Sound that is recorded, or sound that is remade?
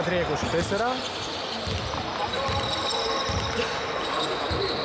recorded